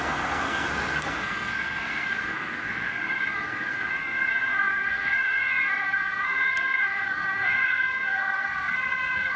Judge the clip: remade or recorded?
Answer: remade